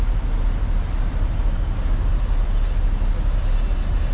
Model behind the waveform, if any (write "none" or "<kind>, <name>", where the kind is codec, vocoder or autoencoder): none